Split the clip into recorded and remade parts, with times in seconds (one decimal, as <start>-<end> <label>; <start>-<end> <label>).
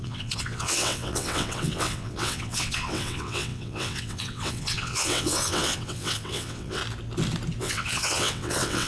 0.0-6.8 remade; 6.8-7.6 recorded; 7.6-8.9 remade